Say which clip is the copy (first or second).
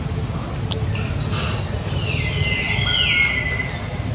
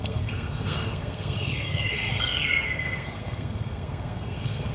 second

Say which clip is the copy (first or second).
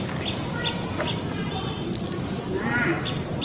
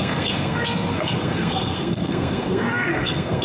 second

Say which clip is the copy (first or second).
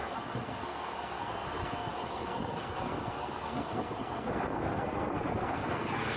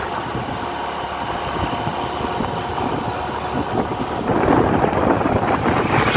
first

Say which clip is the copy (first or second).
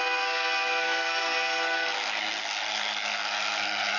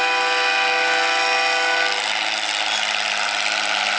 first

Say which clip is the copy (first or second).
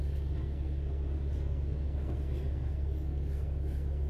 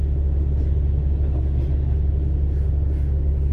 first